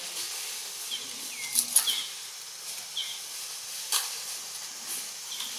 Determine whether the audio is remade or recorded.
recorded